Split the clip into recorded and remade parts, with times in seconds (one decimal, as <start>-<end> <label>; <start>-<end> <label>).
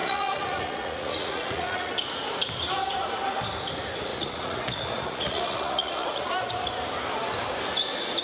0.0-1.9 remade; 1.9-4.1 recorded; 4.1-6.3 remade; 6.3-8.2 recorded